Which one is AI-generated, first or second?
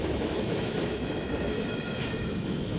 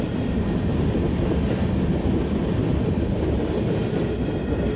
first